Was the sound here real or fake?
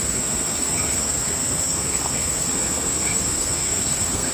fake